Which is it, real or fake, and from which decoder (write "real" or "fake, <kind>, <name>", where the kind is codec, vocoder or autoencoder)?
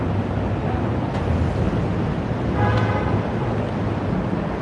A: real